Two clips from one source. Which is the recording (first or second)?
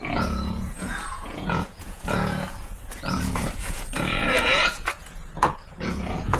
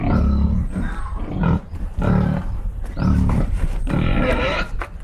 second